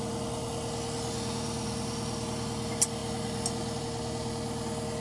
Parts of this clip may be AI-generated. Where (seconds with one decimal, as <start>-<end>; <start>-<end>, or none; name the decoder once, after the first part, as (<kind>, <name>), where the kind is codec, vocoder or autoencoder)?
none